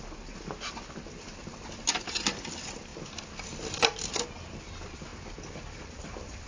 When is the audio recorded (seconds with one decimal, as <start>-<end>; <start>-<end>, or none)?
2.9-4.6; 5.1-5.7